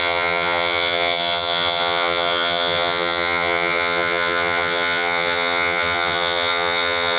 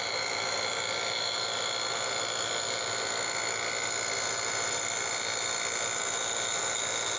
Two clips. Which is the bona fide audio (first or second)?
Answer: second